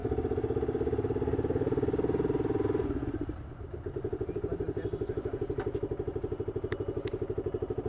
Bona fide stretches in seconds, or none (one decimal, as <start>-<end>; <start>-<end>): 0.0-7.9